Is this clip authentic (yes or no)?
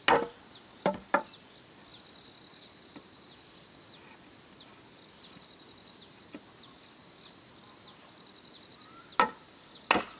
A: yes